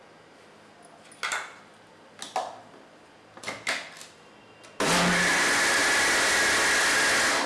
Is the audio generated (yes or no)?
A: no